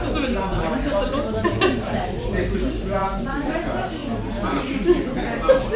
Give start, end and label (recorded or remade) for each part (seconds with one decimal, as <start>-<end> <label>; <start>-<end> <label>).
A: 0.0-0.5 recorded; 0.5-2.3 remade; 2.3-3.0 recorded; 3.0-3.5 remade; 3.5-5.8 recorded